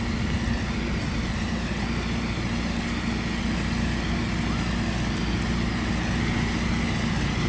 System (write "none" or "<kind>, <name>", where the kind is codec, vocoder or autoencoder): none